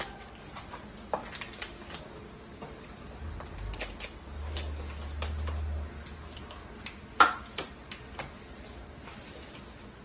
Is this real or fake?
real